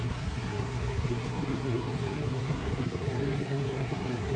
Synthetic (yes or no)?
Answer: yes